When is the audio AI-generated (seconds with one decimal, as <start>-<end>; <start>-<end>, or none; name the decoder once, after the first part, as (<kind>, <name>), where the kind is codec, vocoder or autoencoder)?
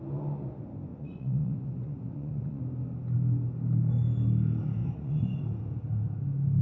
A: 0.9-2.6 (vocoder, Vocos); 4.8-5.4